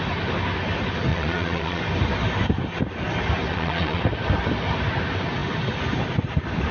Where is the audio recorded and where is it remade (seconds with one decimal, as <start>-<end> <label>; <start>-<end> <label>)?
0.0-1.1 recorded; 1.1-1.8 remade; 1.8-3.5 recorded; 3.5-4.0 remade; 4.0-6.7 recorded